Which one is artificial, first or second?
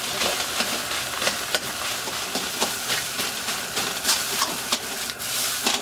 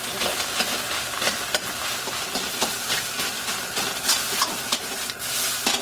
first